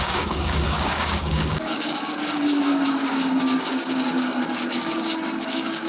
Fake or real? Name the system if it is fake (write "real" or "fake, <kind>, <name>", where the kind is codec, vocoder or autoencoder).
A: fake, codec, DAC